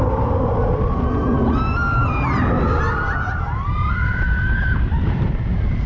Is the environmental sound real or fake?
real